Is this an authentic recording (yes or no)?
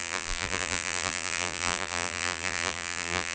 no